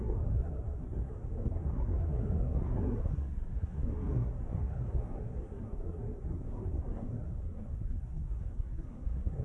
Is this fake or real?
fake